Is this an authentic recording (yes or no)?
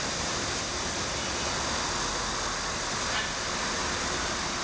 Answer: yes